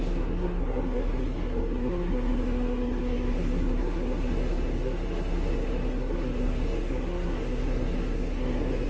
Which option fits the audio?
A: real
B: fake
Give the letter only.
B